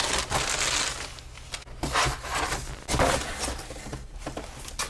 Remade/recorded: recorded